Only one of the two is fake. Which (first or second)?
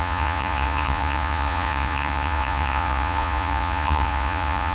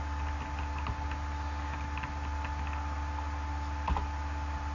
first